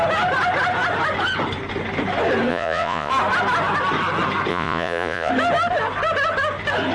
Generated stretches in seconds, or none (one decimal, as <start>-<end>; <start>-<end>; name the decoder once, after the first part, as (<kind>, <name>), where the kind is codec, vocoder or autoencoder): 2.5-3.1 (vocoder, Vocos); 4.5-5.3